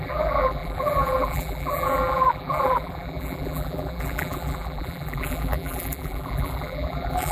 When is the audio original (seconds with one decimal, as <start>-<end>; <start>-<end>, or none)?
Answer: none